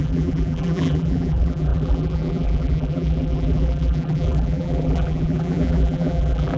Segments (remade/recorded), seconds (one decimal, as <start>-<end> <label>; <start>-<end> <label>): 0.0-6.6 remade